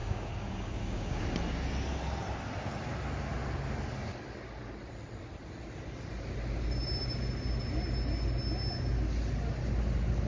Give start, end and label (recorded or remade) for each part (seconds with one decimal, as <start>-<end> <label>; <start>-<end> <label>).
0.0-1.2 remade; 1.2-10.3 recorded